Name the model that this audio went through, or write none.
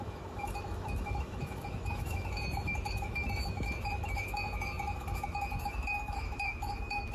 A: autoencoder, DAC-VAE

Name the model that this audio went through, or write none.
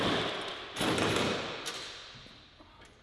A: none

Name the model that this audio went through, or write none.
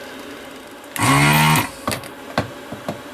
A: none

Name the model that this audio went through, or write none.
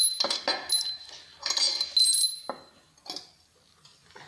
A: none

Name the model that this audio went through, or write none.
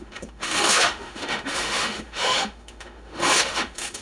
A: autoencoder, DAC-VAE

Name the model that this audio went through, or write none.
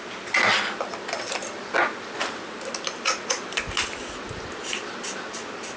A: none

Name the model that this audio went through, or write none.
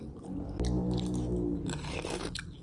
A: none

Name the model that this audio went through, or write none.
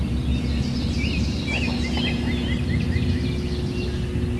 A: none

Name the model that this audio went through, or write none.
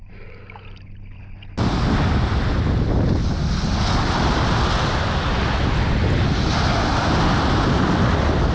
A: none